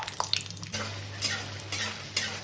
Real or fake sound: real